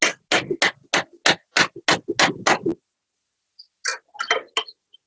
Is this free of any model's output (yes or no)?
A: yes